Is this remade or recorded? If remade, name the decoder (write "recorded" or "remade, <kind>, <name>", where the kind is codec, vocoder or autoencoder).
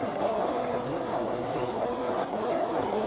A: remade, codec, SNAC